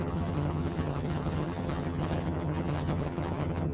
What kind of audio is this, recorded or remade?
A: remade